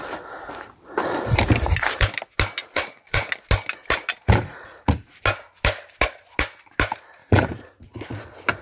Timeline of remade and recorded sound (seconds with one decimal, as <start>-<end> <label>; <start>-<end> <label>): 0.0-2.6 recorded; 2.6-3.3 remade; 3.3-4.5 recorded; 4.5-5.2 remade; 5.2-7.2 recorded; 7.2-8.2 remade; 8.2-8.6 recorded